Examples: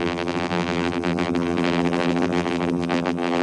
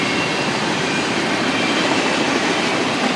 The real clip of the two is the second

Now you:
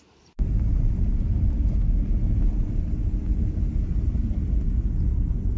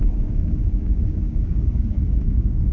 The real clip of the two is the first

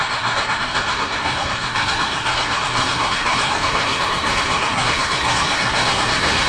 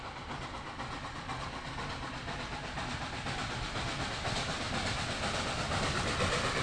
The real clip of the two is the second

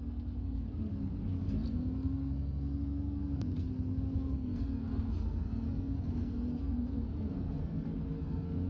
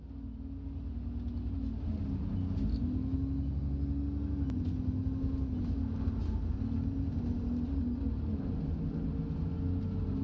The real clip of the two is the second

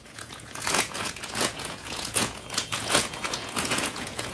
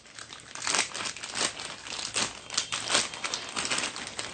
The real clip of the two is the second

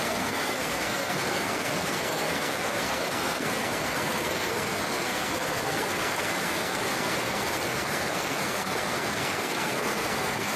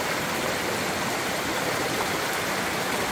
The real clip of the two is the second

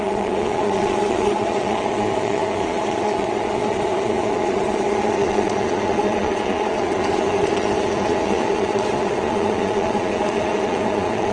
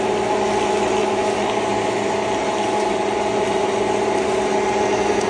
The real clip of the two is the second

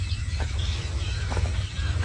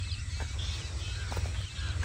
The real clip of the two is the second